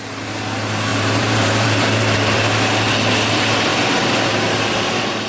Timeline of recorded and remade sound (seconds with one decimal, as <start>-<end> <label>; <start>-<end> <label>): 0.0-0.9 recorded; 0.9-2.4 remade; 2.4-5.3 recorded